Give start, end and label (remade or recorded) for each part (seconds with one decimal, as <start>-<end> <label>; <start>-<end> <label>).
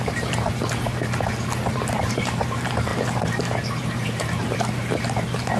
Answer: 0.0-0.9 remade; 0.9-1.7 recorded; 1.7-5.6 remade